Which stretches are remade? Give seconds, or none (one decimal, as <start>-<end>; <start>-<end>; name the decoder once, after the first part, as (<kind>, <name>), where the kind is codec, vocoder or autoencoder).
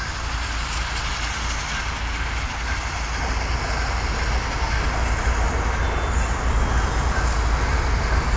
none